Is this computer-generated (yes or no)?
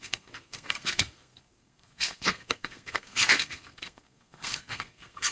yes